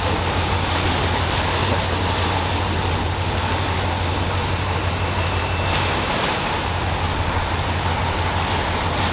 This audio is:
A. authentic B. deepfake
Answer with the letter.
A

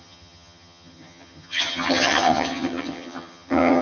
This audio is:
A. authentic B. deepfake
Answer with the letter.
B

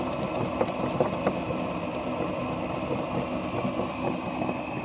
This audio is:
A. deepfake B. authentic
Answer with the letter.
B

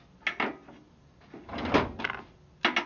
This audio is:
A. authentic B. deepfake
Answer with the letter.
A